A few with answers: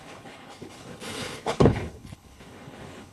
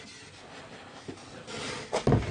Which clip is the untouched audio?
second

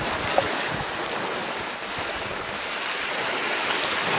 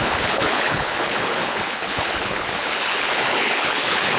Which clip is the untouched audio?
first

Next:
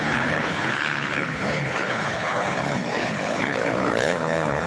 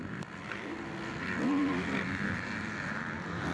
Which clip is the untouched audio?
second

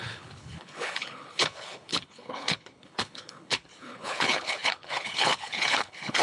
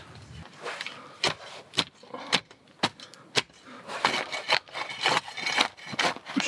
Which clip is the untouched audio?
second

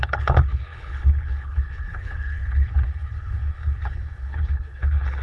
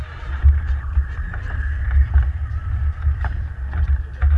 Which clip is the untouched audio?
second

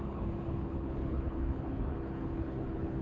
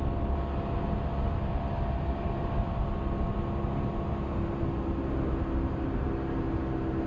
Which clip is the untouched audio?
second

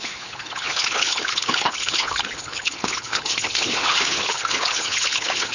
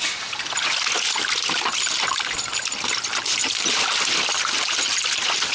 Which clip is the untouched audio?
second